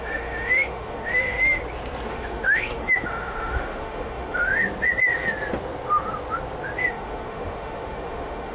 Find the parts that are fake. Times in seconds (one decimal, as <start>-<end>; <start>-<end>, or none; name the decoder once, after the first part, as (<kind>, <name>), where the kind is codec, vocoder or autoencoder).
0.0-1.6 (autoencoder, DAC-VAE); 2.1-4.5; 6.9-8.5